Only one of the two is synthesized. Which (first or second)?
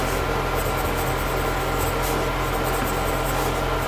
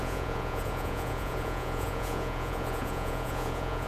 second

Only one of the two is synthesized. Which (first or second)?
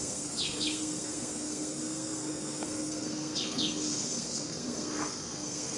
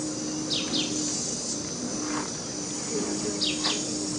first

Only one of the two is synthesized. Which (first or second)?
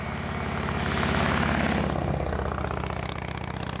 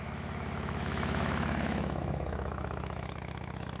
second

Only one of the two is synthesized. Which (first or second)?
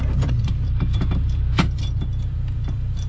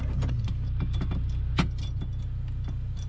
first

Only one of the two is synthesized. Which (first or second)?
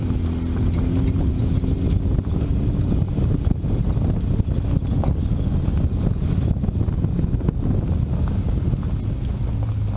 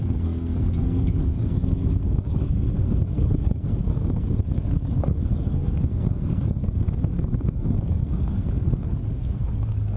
second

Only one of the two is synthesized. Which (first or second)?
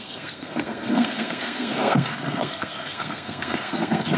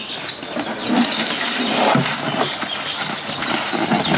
first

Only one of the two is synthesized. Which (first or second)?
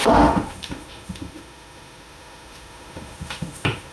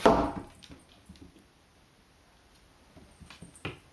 first